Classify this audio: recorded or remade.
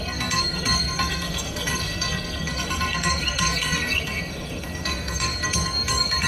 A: remade